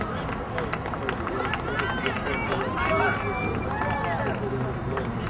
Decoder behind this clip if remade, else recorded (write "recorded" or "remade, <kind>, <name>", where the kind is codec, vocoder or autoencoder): recorded